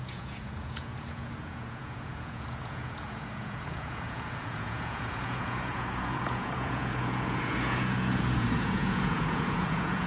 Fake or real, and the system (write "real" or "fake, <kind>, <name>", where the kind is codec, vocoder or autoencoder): fake, vocoder, Vocos